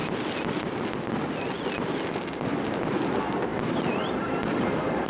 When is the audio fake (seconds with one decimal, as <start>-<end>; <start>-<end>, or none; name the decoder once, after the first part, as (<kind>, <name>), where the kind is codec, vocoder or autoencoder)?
none